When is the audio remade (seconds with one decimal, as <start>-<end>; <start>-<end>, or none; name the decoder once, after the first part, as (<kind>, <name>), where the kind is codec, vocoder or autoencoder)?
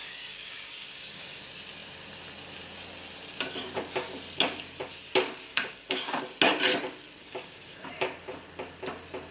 0.0-1.4 (codec, DAC); 5.5-6.2; 7.2-7.9